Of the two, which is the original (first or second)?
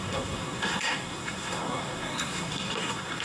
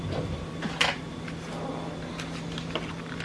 second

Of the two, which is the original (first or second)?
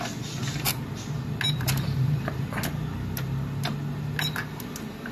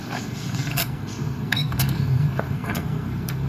first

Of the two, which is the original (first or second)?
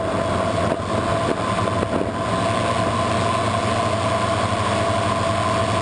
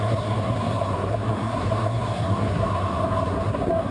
first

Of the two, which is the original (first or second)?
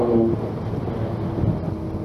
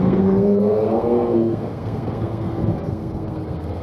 first